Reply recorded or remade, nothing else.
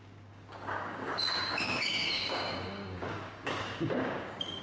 remade